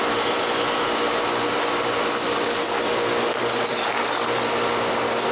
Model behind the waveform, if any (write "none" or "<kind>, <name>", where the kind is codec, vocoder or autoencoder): none